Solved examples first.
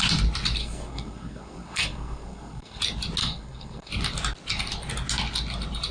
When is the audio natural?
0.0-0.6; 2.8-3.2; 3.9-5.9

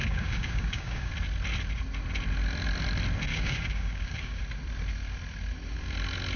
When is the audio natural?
1.1-3.3; 4.4-6.4

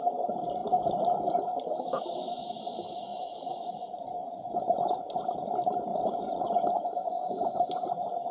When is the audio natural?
0.0-3.1; 5.5-5.9

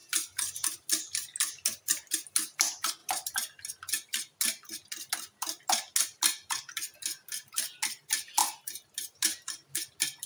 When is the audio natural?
0.0-8.4; 9.5-10.3

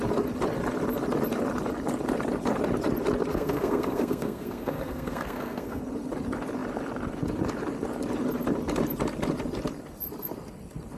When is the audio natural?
0.0-3.3; 5.8-11.0

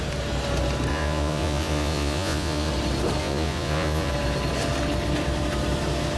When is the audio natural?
0.0-0.9; 2.7-3.2; 4.1-6.2

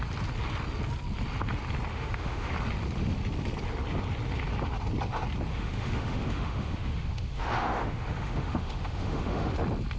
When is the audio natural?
0.0-1.9; 2.5-5.5; 9.5-10.0